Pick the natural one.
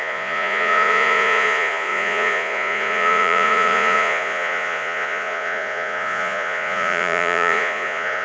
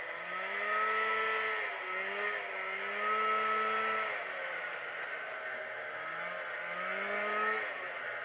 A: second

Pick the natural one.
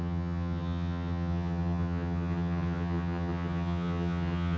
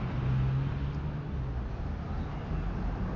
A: second